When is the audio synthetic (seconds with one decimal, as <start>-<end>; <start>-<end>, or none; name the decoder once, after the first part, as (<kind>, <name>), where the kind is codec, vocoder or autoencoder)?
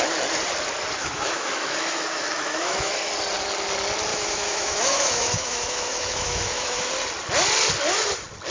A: 1.0-3.1 (autoencoder, DAC-VAE); 4.1-6.9